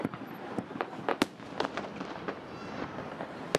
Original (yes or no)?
yes